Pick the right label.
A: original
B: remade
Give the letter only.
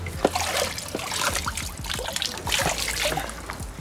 A